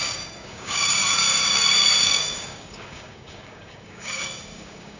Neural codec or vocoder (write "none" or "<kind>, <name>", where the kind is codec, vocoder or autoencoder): codec, DAC